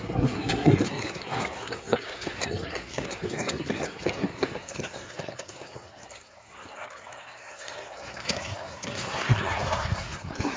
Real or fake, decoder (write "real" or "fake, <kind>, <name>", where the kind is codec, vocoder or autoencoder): fake, codec, SNAC